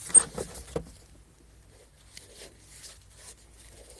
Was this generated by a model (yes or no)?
no